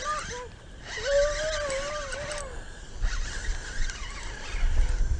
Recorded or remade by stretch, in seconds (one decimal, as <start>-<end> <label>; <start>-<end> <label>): 0.0-5.2 recorded